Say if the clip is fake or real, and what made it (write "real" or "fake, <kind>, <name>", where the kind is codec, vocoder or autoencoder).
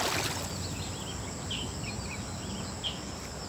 real